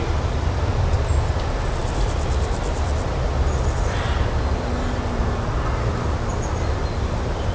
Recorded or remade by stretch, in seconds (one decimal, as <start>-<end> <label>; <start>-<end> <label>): 0.0-7.5 recorded